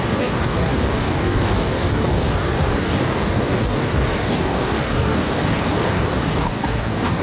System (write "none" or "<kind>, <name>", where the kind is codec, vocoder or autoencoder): codec, DAC